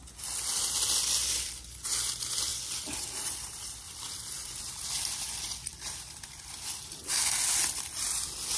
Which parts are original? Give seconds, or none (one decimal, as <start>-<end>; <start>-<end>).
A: 0.0-2.5; 4.7-5.7; 6.4-8.6